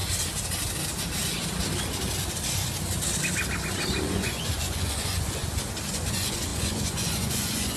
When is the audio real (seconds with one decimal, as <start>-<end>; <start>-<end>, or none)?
0.0-4.0; 5.4-5.9